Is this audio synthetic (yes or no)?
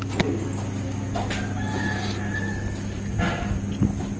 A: no